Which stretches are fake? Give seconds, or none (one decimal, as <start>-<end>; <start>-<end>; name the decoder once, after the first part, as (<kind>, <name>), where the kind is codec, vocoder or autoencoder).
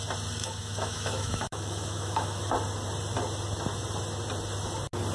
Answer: 0.4-2.5 (autoencoder, DAC-VAE)